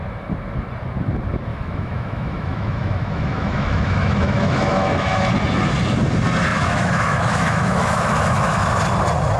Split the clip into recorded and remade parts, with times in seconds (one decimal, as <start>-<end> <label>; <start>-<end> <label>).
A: 0.0-1.5 recorded; 1.5-5.3 remade; 5.3-6.5 recorded; 6.5-8.7 remade; 8.7-9.4 recorded